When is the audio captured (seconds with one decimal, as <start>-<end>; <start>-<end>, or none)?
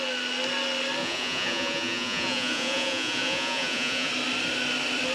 0.0-1.0; 4.1-5.1